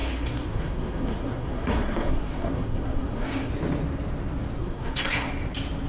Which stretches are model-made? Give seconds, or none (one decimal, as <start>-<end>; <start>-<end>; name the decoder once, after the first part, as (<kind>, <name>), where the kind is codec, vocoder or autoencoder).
0.0-3.5 (codec, SNAC); 4.6-5.3